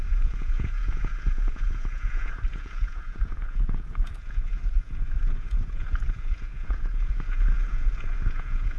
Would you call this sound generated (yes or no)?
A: yes